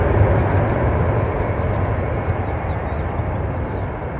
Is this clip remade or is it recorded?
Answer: recorded